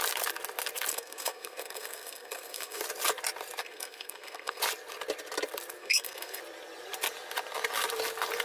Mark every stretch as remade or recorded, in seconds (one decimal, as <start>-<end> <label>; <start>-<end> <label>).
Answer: 0.0-0.9 recorded; 0.9-2.8 remade; 2.8-3.6 recorded; 3.6-4.6 remade; 4.6-5.8 recorded; 5.8-6.4 remade; 6.4-8.4 recorded